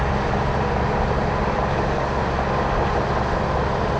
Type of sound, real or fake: real